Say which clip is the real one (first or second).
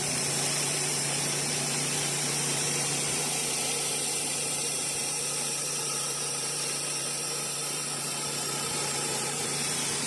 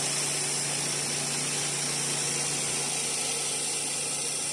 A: second